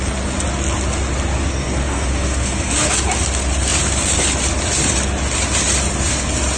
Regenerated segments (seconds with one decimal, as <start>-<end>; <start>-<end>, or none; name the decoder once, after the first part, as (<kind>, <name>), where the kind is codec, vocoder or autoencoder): 1.5-2.7 (codec, SNAC)